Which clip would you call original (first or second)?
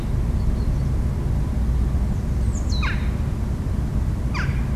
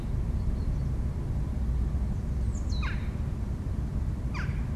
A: first